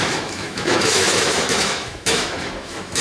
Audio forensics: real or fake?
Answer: fake